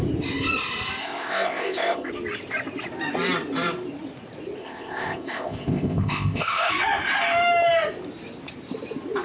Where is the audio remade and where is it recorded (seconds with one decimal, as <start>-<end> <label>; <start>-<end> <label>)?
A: 0.0-1.0 recorded; 1.0-2.1 remade; 2.1-4.6 recorded; 4.6-6.7 remade; 6.7-9.2 recorded